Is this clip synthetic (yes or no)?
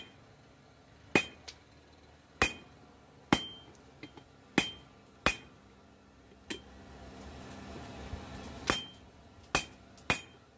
no